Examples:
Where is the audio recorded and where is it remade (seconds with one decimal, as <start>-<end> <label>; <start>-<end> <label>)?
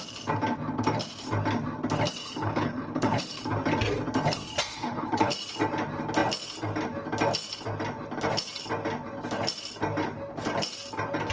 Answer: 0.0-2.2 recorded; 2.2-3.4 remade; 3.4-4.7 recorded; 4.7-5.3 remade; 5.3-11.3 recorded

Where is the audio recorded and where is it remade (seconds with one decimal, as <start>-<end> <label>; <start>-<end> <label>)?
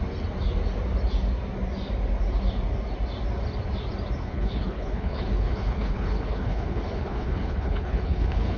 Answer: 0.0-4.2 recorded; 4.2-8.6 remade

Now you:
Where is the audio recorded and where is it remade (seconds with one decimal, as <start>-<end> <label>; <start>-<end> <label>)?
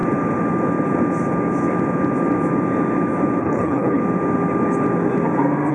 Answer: 0.0-3.4 recorded; 3.4-4.0 remade; 4.0-5.7 recorded